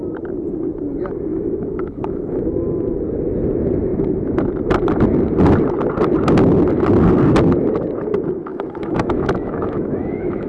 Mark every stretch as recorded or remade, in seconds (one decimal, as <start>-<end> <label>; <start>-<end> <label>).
0.0-1.3 recorded; 1.3-2.4 remade; 2.4-8.5 recorded; 8.5-10.5 remade